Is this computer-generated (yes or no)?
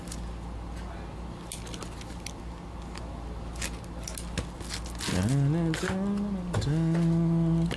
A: no